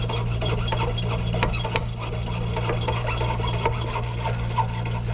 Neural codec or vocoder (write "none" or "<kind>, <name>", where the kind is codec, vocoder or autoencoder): none